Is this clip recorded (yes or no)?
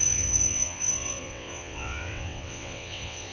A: no